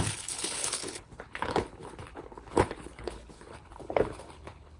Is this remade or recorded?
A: remade